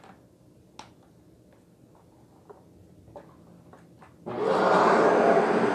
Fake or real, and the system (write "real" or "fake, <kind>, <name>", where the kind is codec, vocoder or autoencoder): real